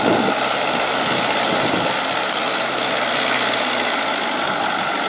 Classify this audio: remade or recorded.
recorded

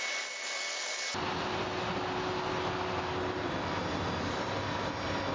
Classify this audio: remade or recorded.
recorded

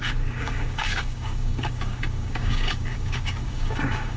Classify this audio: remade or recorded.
remade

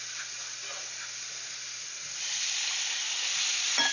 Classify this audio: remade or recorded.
recorded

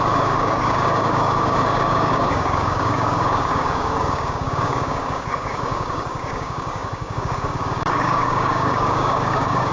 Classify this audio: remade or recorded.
remade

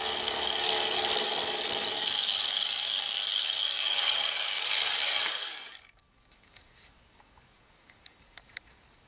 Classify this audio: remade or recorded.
remade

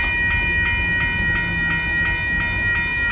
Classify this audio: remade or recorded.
recorded